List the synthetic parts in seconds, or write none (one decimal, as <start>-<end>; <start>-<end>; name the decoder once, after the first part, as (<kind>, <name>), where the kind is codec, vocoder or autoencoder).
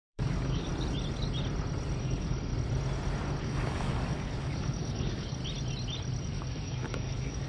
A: 0.0-0.7 (codec, DAC); 2.0-2.5; 3.4-5.4; 6.2-7.5